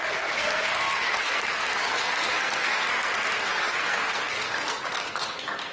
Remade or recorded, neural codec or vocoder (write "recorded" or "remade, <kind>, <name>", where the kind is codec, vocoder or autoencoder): remade, codec, SNAC